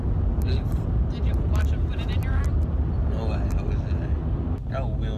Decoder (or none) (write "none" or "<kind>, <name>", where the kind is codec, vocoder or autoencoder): none